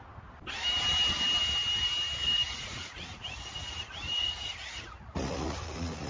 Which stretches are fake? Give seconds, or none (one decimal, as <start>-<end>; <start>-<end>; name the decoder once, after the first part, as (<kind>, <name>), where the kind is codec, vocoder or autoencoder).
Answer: 2.2-6.1 (vocoder, Vocos)